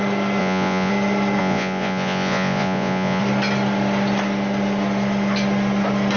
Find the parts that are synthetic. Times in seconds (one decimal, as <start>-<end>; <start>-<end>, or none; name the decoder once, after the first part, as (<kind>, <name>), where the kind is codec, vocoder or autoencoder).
0.4-0.9 (vocoder, Vocos); 1.4-3.2